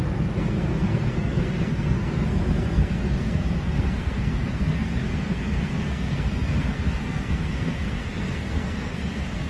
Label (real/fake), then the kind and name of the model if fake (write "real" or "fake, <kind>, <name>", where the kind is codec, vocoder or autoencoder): fake, codec, SNAC